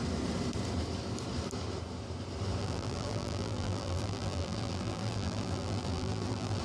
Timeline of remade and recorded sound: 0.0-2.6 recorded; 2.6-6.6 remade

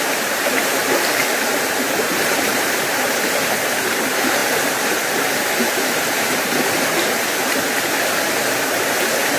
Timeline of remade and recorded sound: 0.0-0.8 remade; 0.8-1.5 recorded; 1.5-9.4 remade

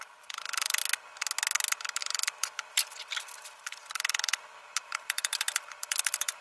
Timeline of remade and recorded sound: 0.0-0.8 remade; 0.8-2.0 recorded; 2.0-6.4 remade

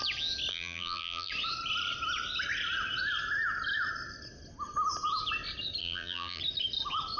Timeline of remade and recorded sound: 0.0-0.5 recorded; 0.5-1.3 remade; 1.3-5.8 recorded; 5.8-6.4 remade; 6.4-7.2 recorded